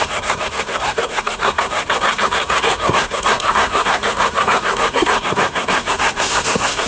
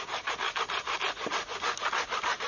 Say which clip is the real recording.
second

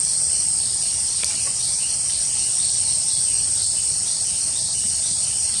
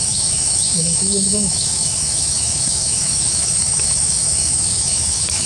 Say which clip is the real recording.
first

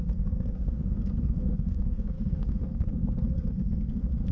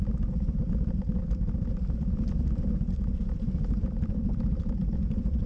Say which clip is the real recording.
second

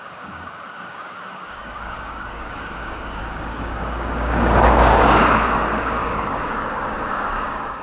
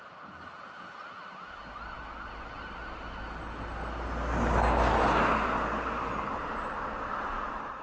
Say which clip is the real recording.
second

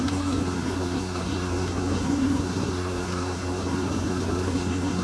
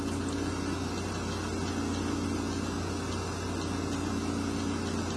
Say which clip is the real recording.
second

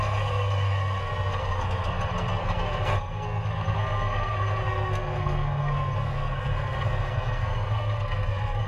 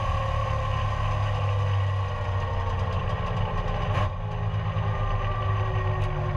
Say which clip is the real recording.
second